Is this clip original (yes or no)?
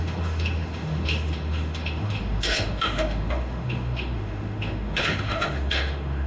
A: no